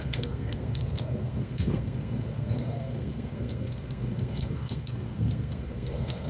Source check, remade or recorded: remade